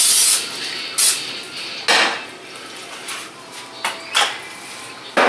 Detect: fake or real real